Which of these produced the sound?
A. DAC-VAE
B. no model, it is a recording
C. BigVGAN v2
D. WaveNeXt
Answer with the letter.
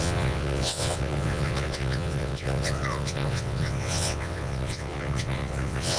D